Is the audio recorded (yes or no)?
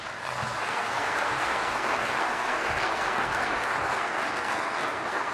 no